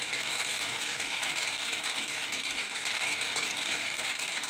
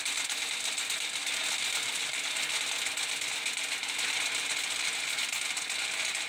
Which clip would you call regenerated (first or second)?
first